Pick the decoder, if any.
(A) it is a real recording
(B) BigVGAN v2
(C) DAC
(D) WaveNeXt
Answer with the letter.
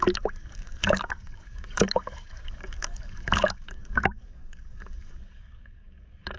C